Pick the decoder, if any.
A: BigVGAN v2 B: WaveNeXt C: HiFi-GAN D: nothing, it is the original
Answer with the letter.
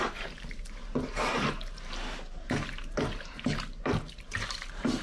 A